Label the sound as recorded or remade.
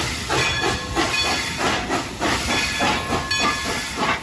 recorded